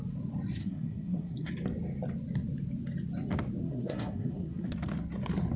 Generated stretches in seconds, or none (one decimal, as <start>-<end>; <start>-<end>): 0.6-1.5; 3.6-4.7